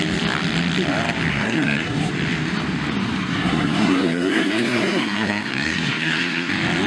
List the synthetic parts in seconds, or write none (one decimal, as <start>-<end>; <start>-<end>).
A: 1.3-2.1; 3.2-6.5